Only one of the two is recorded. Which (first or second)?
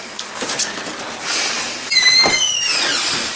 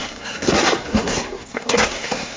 first